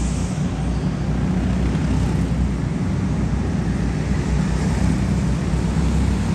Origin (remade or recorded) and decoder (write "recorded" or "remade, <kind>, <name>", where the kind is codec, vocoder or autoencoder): recorded